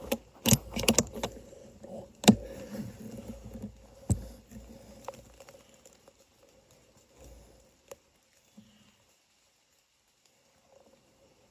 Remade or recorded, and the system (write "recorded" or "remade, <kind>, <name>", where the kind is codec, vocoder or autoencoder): recorded